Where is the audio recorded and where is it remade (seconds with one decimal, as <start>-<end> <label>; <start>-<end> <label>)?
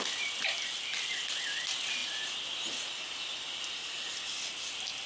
0.0-5.1 recorded